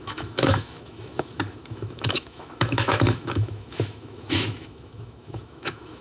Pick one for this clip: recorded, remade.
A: remade